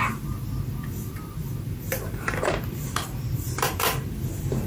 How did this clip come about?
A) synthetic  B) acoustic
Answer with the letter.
A